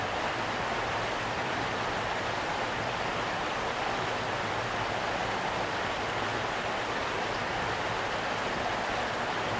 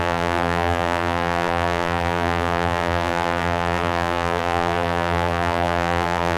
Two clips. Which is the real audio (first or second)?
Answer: first